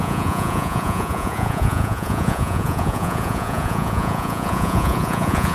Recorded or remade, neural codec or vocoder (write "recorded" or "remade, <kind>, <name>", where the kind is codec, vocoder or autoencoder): remade, vocoder, Vocos